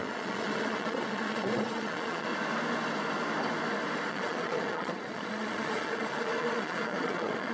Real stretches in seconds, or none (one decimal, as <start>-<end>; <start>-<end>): 2.3-4.1